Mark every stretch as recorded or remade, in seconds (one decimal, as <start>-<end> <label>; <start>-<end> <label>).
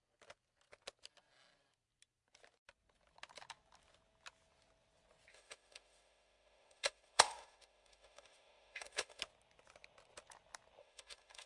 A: 0.0-5.3 recorded; 5.3-9.2 remade; 9.2-10.8 recorded; 10.8-11.5 remade